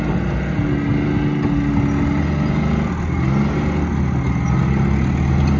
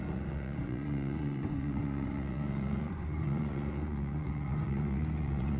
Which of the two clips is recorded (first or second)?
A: first